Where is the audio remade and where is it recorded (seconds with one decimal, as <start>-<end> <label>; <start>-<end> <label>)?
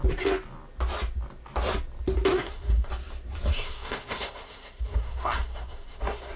0.0-2.3 recorded; 2.3-2.9 remade; 2.9-3.5 recorded; 3.5-6.4 remade